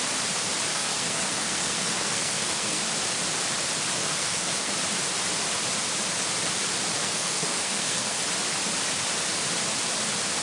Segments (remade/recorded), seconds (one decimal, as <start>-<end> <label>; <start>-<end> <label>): 0.0-0.7 recorded; 0.7-2.8 remade; 2.8-4.0 recorded; 4.0-4.7 remade; 4.7-7.0 recorded; 7.0-8.2 remade; 8.2-10.4 recorded